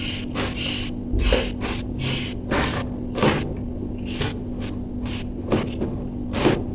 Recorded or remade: recorded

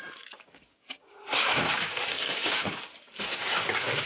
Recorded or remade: remade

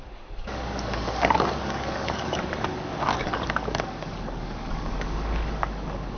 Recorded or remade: remade